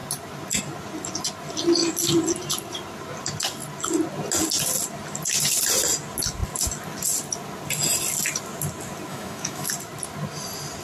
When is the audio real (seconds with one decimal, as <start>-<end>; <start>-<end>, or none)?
0.0-9.1; 9.7-10.8